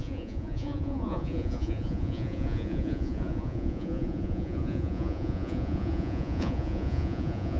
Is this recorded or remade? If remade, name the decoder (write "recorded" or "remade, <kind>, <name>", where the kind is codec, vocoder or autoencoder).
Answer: remade, vocoder, Vocos